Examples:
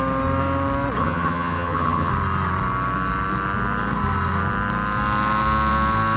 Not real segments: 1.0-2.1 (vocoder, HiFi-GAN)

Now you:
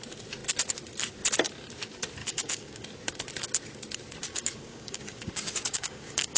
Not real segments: 2.2-2.8 (codec, DAC); 4.3-6.4

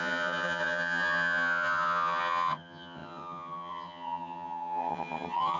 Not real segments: 0.0-5.6 (vocoder, HiFi-GAN)

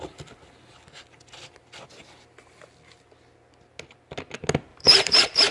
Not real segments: 4.7-5.5 (vocoder, BigVGAN v2)

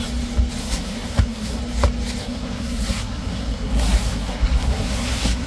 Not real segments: 0.6-1.6 (codec, SNAC); 2.2-5.5

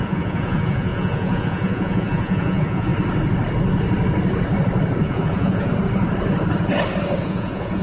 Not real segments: 0.0-2.9 (vocoder, Vocos); 5.0-5.7; 7.2-7.8

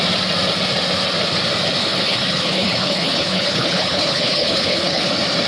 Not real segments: 1.8-5.1 (codec, HILCodec)